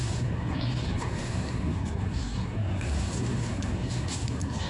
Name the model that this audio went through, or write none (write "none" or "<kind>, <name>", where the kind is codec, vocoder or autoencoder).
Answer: codec, SNAC